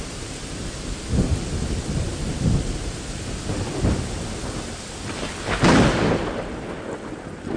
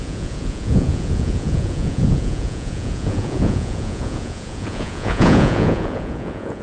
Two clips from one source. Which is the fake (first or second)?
second